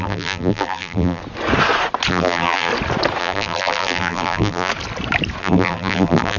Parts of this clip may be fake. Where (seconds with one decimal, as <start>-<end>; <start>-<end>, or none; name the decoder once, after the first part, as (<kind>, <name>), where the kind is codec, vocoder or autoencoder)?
0.0-1.2 (vocoder, BigVGAN v2); 2.1-2.7; 3.2-4.7; 5.4-6.4